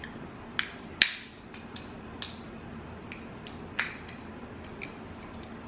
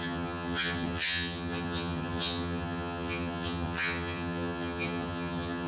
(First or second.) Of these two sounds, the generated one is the second